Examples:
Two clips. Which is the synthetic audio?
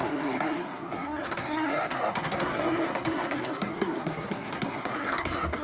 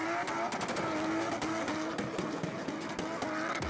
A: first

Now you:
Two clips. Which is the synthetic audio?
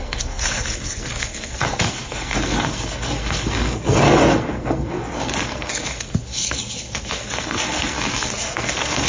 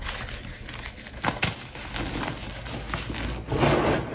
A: first